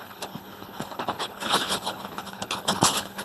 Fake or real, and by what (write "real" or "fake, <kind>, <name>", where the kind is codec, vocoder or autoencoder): fake, codec, HILCodec